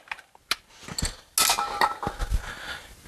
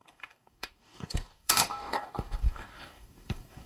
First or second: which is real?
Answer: first